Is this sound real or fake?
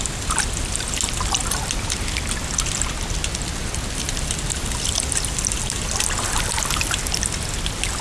real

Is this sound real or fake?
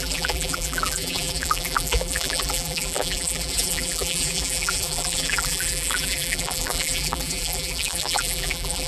fake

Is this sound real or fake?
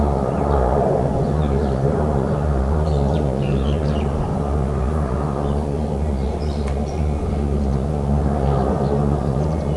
fake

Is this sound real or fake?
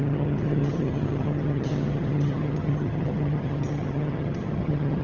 fake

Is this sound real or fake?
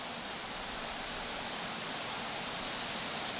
fake